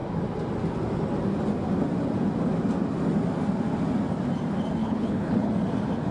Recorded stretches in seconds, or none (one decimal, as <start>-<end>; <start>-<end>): 0.0-4.8; 5.5-6.1